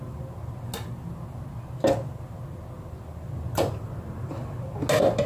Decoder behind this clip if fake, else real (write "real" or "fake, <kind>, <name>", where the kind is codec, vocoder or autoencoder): real